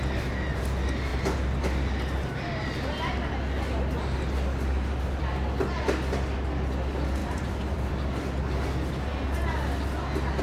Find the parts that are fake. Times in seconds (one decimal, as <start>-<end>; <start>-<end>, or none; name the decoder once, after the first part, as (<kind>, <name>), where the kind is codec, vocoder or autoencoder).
7.2-7.9 (vocoder, BigVGAN v2)